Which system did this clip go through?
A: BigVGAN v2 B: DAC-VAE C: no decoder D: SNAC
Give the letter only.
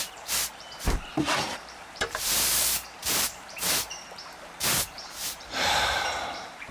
A